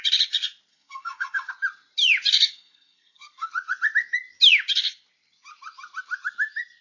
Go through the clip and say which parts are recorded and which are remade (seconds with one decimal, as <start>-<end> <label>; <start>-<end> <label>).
0.0-0.7 recorded; 0.7-1.5 remade; 1.5-2.5 recorded; 2.5-3.5 remade; 3.5-6.8 recorded